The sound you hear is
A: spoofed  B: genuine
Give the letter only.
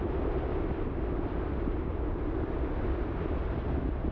B